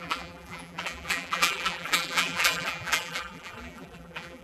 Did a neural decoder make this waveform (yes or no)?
yes